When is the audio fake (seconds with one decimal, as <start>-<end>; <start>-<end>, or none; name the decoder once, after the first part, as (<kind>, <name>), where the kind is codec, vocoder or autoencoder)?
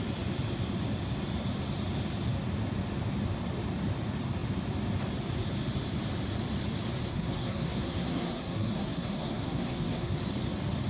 7.1-10.2 (codec, SNAC)